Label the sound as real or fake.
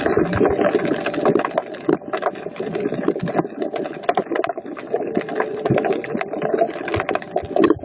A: real